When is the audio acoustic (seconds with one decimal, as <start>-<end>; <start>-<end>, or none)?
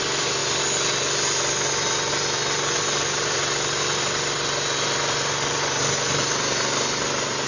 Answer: 0.0-7.5